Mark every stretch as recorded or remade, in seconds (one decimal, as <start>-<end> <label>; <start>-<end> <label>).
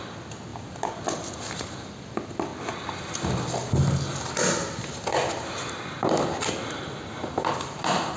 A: 0.0-8.2 recorded